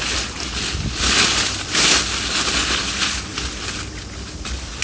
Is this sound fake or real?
real